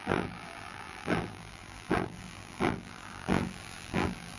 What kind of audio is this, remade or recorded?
remade